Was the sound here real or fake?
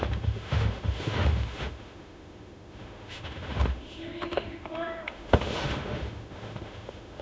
fake